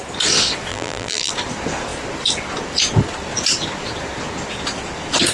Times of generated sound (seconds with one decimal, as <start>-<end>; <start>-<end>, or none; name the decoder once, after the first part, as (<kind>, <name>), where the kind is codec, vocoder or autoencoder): 0.7-1.3 (vocoder, BigVGAN v2)